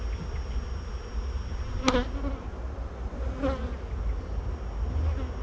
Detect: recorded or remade recorded